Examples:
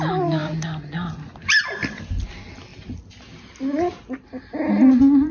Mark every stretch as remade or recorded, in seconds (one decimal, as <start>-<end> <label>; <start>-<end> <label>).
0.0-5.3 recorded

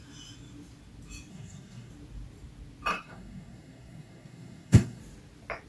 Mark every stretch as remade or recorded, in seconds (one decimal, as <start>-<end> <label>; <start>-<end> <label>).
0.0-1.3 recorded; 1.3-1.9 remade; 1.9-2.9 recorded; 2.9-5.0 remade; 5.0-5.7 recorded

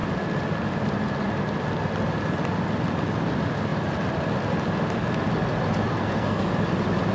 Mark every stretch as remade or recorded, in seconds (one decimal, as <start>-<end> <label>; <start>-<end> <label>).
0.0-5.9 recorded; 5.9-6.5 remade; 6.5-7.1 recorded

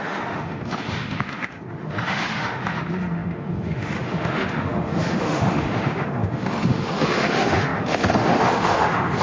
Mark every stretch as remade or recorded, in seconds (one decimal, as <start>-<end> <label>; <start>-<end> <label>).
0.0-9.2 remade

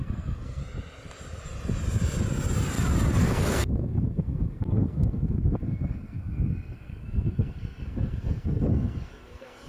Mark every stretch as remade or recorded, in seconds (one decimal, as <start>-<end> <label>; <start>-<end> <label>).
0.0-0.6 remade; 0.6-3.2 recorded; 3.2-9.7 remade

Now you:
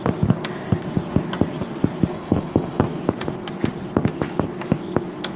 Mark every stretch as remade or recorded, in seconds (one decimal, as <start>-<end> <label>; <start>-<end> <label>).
0.0-2.1 recorded; 2.1-2.8 remade; 2.8-5.4 recorded